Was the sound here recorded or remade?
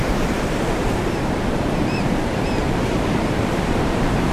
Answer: remade